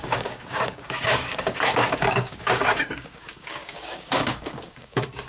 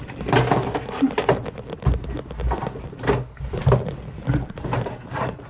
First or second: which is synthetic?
first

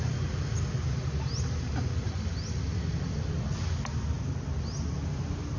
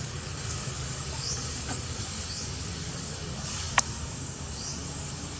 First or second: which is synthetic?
second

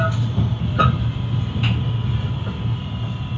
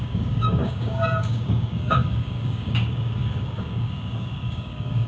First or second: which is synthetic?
second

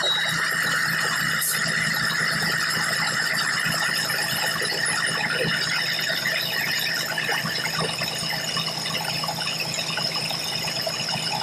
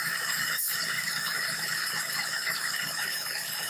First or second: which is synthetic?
second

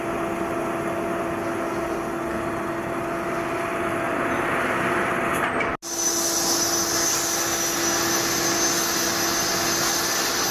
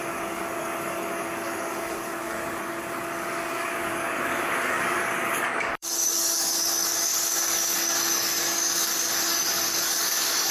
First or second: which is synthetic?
second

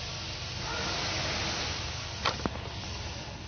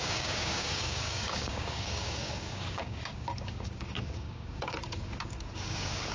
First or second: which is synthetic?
second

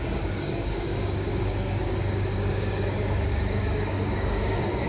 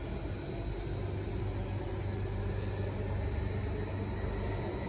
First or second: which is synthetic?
first